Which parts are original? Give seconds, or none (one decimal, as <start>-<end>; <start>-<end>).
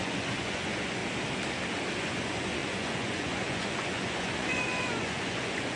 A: 1.0-2.0